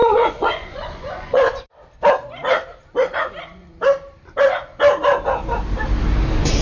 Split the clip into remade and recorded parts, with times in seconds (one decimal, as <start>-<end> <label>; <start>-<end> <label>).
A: 0.0-1.5 remade; 1.5-6.6 recorded